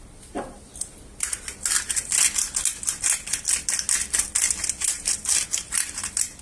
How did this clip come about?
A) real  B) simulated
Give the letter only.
A